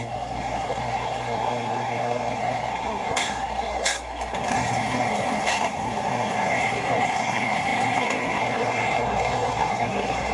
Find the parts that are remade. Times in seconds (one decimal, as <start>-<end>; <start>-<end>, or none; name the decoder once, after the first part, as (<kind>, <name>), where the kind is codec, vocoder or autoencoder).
0.0-10.3 (codec, SNAC)